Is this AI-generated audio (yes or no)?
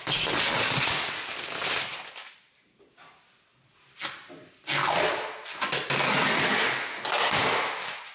no